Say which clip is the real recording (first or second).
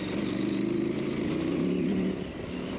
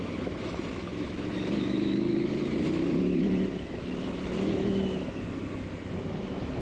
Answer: first